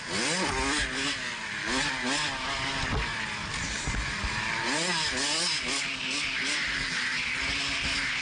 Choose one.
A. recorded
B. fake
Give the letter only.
A